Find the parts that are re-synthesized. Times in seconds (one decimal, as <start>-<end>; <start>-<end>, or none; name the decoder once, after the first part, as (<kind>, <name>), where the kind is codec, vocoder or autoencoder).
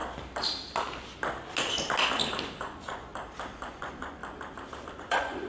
2.6-3.1 (vocoder, Vocos); 3.7-4.2; 4.9-5.5